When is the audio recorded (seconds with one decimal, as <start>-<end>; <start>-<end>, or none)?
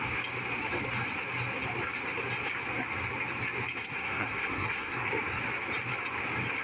0.0-3.7; 5.1-6.6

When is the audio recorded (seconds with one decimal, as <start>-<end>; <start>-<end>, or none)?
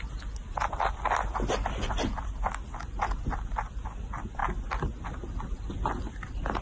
0.0-6.6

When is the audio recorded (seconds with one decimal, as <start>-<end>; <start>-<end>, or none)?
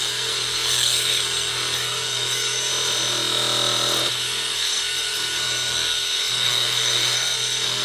2.7-4.1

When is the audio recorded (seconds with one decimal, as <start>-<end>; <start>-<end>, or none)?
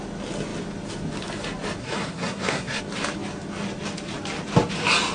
0.0-1.8; 2.8-5.1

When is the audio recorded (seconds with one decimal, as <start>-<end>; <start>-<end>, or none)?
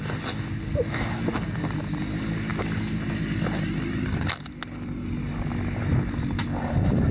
0.0-7.1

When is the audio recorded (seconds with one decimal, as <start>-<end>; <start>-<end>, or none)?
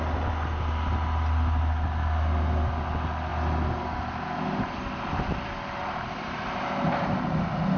0.0-7.8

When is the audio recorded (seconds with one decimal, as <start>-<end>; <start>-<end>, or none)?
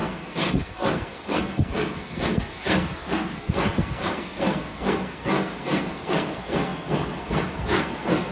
none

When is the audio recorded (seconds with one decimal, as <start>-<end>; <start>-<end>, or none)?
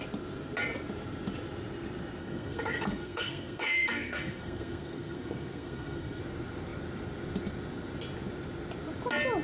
0.0-2.2; 6.2-9.4